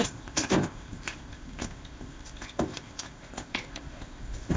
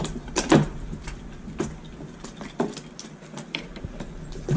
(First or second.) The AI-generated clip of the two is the first